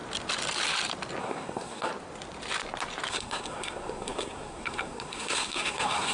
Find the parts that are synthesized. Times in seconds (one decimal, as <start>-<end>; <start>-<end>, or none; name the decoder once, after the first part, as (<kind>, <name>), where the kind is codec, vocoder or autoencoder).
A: 1.2-1.9 (codec, SNAC); 3.1-6.1